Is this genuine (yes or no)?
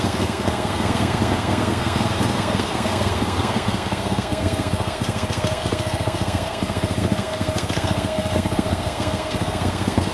no